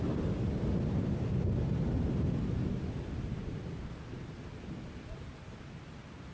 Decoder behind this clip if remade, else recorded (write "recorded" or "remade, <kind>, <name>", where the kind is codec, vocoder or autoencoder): recorded